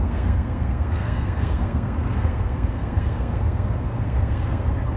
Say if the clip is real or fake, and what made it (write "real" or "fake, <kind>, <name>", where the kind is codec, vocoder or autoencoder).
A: fake, codec, SNAC